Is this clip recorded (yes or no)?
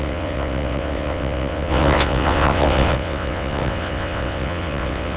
no